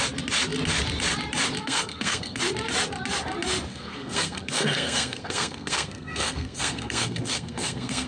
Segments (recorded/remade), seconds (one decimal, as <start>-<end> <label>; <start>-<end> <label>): 0.0-1.6 recorded; 1.6-2.4 remade; 2.4-3.7 recorded; 3.7-8.1 remade